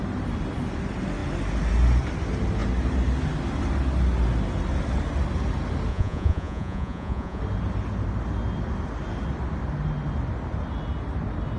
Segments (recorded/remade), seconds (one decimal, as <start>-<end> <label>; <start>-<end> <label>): 0.0-5.9 recorded; 5.9-7.4 remade; 7.4-11.6 recorded